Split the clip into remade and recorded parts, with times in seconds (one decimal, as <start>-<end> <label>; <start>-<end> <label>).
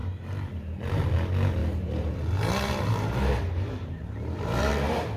0.0-1.0 remade; 1.0-1.6 recorded; 1.6-4.7 remade; 4.7-5.2 recorded